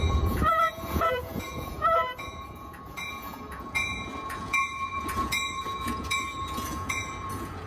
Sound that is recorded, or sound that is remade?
remade